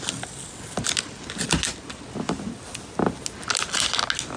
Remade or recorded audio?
recorded